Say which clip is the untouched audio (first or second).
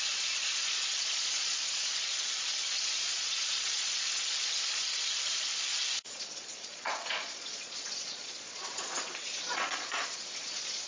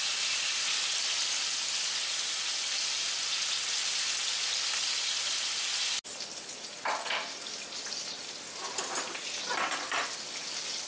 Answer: second